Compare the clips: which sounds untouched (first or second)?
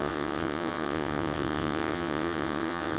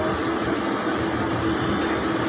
second